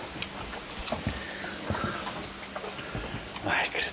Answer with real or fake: real